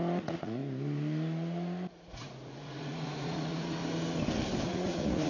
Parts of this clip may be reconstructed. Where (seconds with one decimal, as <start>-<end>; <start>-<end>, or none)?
0.0-0.6; 1.9-3.8; 4.7-5.3